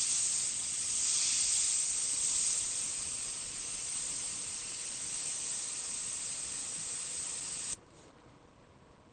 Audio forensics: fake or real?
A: real